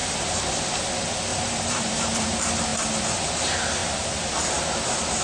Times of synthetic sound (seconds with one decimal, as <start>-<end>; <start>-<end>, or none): 0.0-0.5; 1.3-2.2; 3.8-4.3

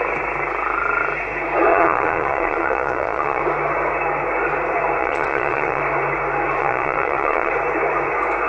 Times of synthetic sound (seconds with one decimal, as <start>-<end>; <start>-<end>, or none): 1.7-3.4; 5.0-5.8; 6.6-7.5

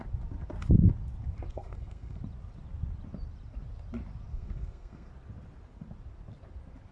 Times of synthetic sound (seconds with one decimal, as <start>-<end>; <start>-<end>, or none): 1.5-2.2; 4.3-5.1

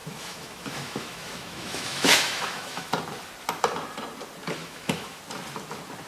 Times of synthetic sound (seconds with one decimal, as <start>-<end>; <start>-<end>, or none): 0.0-2.9; 4.6-5.2

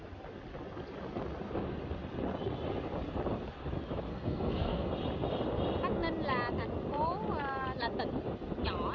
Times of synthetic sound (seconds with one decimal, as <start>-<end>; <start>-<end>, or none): 4.1-4.9